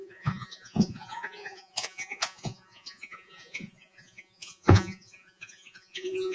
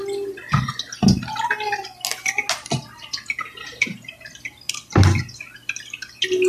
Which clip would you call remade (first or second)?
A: first